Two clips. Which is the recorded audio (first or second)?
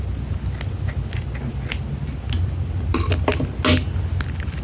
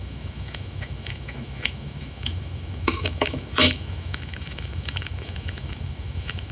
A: first